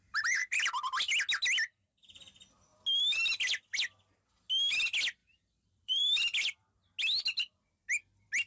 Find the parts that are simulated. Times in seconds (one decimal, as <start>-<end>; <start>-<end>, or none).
0.0-0.7; 5.2-6.2